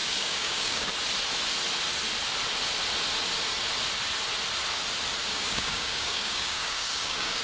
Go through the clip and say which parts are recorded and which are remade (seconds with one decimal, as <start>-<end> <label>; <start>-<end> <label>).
0.0-0.9 remade; 0.9-5.2 recorded; 5.2-7.4 remade